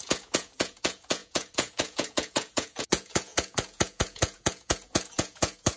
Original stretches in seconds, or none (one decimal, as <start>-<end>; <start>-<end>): none